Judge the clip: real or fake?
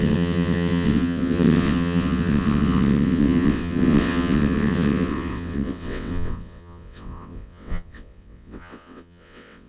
fake